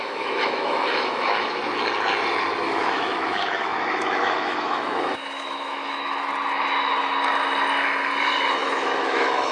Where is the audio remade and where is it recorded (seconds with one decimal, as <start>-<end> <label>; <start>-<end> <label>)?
0.0-1.6 remade; 1.6-2.6 recorded; 2.6-6.3 remade; 6.3-8.5 recorded; 8.5-9.5 remade